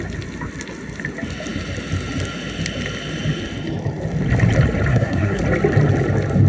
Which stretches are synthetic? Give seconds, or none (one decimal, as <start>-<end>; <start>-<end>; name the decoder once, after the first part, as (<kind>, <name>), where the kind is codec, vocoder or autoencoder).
4.9-5.4 (codec, SNAC)